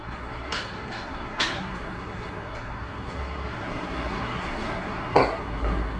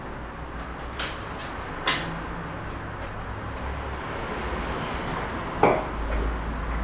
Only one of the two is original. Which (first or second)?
second